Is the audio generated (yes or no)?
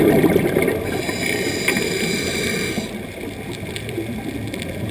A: no